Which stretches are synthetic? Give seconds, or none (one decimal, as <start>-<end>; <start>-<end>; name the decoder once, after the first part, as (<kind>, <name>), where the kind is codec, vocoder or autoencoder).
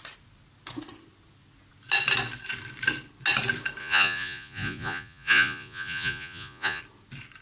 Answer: 3.8-6.8 (vocoder, Vocos)